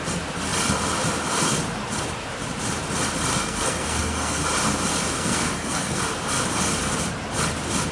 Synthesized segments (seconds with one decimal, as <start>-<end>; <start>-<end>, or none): 3.3-4.4; 4.9-6.0